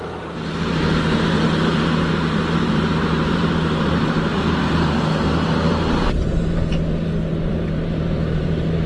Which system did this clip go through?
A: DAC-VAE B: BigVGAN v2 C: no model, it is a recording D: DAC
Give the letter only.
B